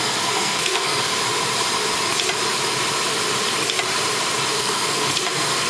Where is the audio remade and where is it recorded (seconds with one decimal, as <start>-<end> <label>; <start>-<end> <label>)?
0.0-1.1 remade; 1.1-4.5 recorded; 4.5-5.7 remade